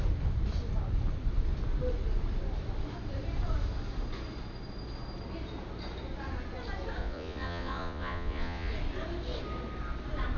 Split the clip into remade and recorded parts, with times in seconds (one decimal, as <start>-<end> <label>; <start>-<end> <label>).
0.0-7.0 recorded; 7.0-8.7 remade; 8.7-10.4 recorded